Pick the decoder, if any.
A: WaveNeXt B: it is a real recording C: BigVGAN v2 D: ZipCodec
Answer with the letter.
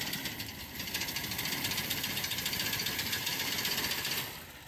B